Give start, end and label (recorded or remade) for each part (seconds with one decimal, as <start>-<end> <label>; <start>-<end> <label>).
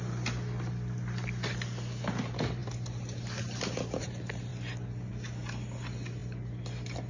0.0-7.1 recorded